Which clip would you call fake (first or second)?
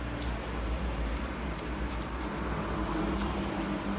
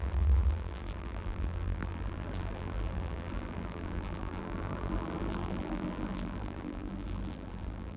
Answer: second